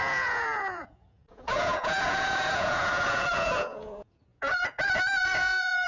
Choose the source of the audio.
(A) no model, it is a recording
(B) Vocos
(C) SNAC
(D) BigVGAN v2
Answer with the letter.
B